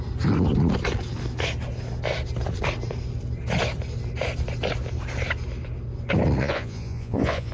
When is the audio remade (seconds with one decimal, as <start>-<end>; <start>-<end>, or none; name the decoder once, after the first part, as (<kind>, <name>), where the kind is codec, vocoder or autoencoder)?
6.4-7.5 (vocoder, Vocos)